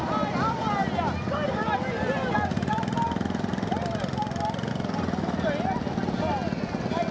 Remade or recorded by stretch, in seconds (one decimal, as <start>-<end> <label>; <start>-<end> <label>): 0.0-7.1 recorded